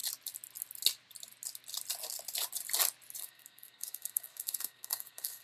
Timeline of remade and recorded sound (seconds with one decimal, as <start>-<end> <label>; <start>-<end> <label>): 0.0-3.2 recorded; 3.2-5.4 remade